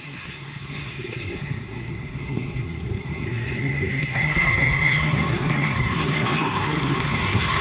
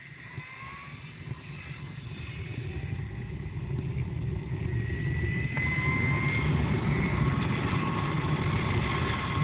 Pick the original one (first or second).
second